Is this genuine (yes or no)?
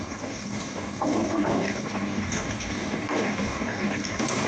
no